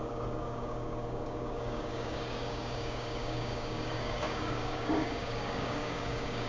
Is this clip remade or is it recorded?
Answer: remade